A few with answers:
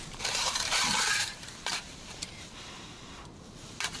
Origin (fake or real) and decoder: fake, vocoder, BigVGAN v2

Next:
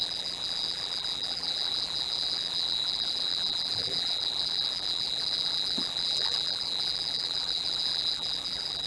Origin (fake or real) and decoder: fake, vocoder, BigVGAN v2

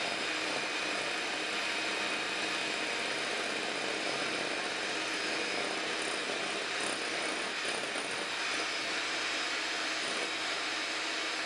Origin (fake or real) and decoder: real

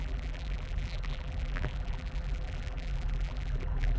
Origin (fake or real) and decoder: fake, vocoder, BigVGAN v2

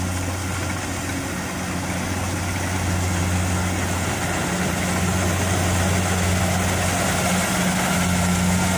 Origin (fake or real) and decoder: real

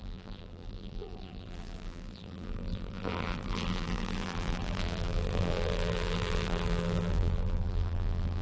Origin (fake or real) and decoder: fake, vocoder, BigVGAN v2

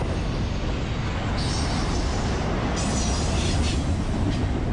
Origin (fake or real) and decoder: real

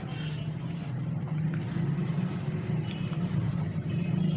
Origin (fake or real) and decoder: real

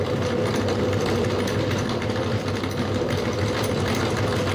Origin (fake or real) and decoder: fake, vocoder, BigVGAN v2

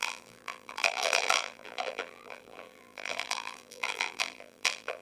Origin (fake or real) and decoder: fake, vocoder, BigVGAN v2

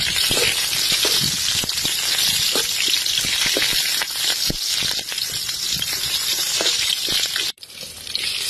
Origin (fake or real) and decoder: real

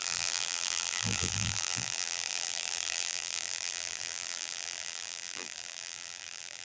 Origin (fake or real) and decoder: fake, vocoder, BigVGAN v2